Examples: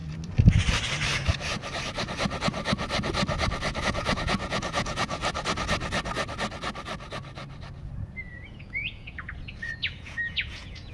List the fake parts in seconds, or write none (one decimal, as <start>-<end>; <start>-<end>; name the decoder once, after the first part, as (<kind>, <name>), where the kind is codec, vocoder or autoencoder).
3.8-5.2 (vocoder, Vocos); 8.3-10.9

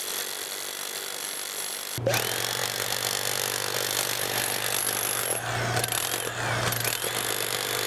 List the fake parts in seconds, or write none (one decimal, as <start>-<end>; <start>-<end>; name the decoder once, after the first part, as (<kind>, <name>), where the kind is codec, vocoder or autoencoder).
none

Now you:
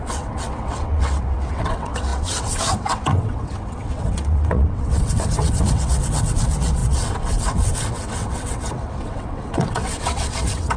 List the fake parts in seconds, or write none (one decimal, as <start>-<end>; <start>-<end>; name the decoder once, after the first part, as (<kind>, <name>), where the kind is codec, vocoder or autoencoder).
0.0-10.8 (vocoder, WaveNeXt)